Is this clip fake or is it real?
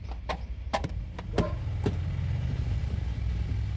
real